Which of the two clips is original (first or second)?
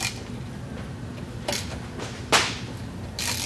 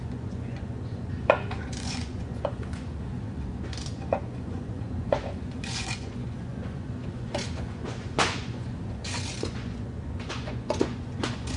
first